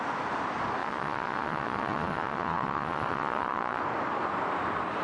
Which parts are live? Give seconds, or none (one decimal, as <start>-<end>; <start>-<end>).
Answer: 0.0-0.8; 3.8-5.0